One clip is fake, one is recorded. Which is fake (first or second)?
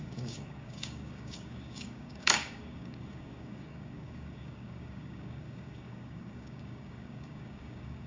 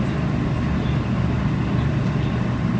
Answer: first